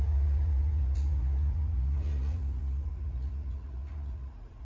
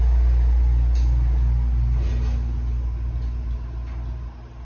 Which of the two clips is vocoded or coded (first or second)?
first